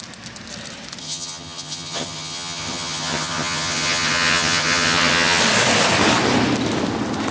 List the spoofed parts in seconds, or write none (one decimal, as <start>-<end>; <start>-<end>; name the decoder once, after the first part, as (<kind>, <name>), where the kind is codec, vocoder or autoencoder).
1.0-5.4 (vocoder, HiFi-GAN)